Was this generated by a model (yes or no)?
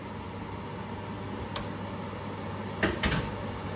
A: no